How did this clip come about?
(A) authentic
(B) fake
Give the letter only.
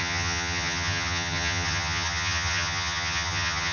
B